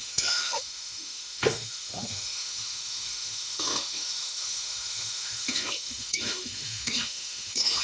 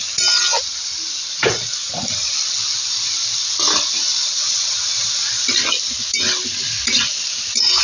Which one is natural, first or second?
second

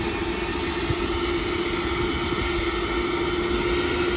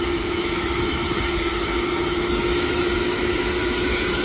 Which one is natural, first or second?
first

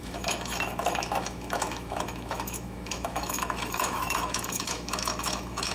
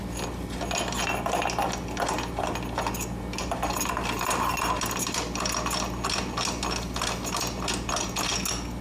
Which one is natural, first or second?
second